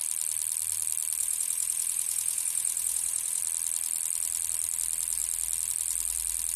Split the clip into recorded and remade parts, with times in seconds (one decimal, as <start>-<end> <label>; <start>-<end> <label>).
0.0-1.2 recorded; 1.2-3.4 remade; 3.4-6.6 recorded